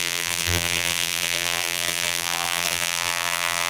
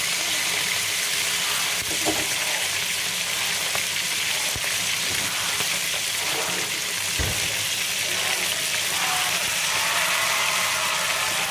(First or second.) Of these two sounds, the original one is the second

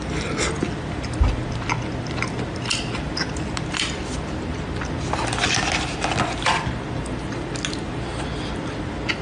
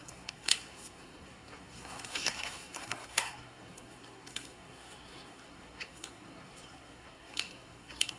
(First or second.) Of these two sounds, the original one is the first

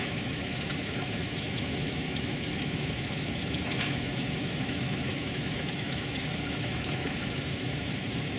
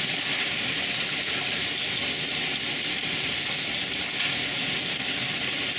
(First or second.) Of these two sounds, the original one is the second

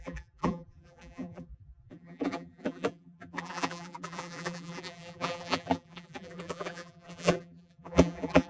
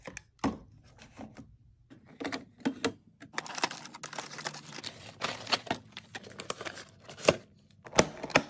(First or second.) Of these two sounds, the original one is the second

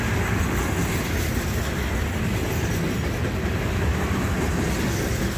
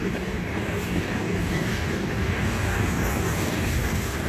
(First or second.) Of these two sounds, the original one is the first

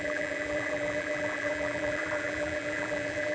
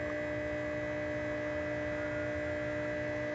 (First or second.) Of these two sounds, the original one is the second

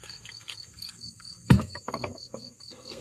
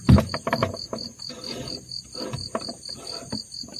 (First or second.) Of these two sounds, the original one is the second